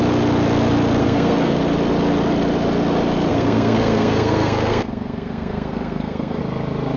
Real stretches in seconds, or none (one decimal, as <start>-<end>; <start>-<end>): 0.0-1.0; 1.6-3.3; 6.4-7.0